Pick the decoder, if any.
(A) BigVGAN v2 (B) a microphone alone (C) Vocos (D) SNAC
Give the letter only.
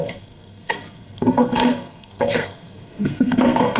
D